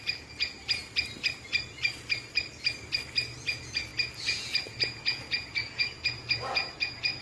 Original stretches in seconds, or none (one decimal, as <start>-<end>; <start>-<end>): 0.8-3.4